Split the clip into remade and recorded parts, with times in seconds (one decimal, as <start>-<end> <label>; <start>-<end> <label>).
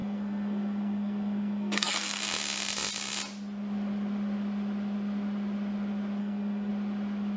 0.0-2.2 remade; 2.2-6.2 recorded; 6.2-6.7 remade; 6.7-7.4 recorded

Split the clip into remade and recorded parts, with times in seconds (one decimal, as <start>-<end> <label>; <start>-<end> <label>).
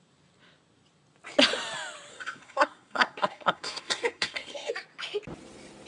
0.0-2.1 recorded; 2.1-4.7 remade; 4.7-5.9 recorded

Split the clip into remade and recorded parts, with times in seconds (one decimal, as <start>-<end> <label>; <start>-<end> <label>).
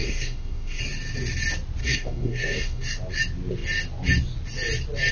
0.0-0.8 remade; 0.8-1.8 recorded; 1.8-2.8 remade; 2.8-5.1 recorded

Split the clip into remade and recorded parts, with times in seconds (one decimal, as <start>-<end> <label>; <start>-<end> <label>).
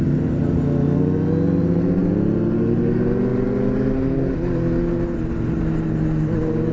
0.0-6.7 recorded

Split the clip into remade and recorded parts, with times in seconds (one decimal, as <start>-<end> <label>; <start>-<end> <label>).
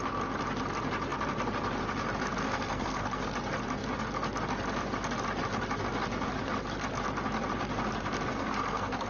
0.0-2.4 recorded; 2.4-3.3 remade; 3.3-8.3 recorded; 8.3-9.1 remade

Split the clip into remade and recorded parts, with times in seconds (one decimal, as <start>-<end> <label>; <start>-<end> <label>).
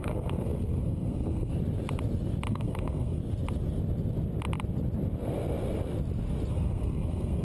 0.0-1.5 remade; 1.5-2.5 recorded; 2.5-3.2 remade; 3.2-6.5 recorded; 6.5-7.4 remade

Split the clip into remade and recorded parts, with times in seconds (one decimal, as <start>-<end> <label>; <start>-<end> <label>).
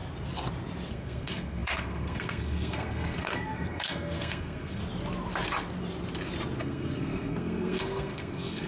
0.0-0.9 recorded; 0.9-4.8 remade; 4.8-6.6 recorded; 6.6-8.7 remade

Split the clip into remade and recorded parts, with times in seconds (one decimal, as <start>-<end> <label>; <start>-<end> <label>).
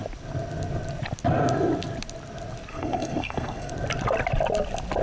0.0-2.7 recorded; 2.7-3.7 remade; 3.7-5.0 recorded